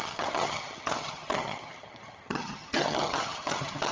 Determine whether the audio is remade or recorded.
remade